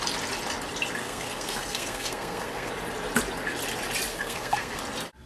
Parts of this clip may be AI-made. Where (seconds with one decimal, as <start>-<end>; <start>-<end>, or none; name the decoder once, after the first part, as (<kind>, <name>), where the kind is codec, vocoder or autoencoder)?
1.0-2.7 (codec, SNAC); 4.1-4.8